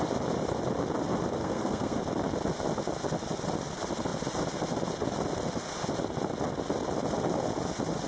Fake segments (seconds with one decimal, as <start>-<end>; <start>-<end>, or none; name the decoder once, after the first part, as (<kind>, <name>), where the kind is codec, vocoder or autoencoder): 1.4-2.0 (codec, SNAC)